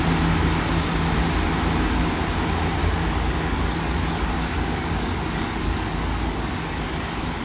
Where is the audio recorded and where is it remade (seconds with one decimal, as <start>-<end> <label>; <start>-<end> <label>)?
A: 0.0-2.8 recorded; 2.8-7.4 remade